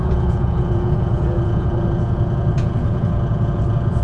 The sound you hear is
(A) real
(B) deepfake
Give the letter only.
B